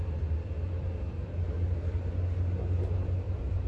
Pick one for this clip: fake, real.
real